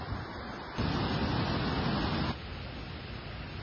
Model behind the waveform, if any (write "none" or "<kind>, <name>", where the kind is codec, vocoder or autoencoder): none